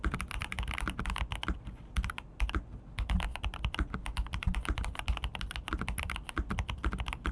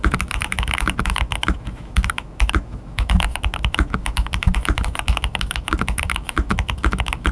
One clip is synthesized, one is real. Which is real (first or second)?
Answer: first